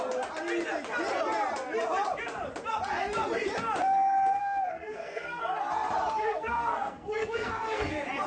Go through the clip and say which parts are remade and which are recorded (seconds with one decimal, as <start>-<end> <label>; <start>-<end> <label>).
0.0-4.4 recorded; 4.4-5.4 remade; 5.4-6.2 recorded; 6.2-7.9 remade; 7.9-8.3 recorded